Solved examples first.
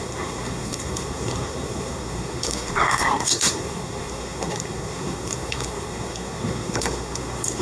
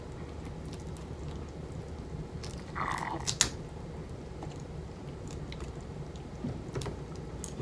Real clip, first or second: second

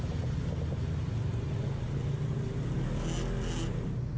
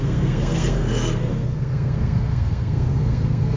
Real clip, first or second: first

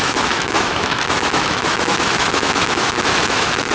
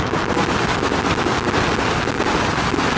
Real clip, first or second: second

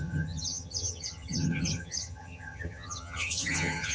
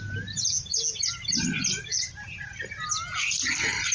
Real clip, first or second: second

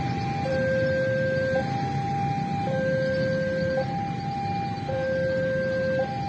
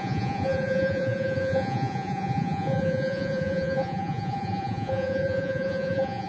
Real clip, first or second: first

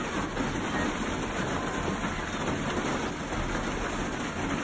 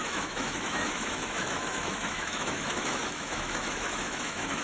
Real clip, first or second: first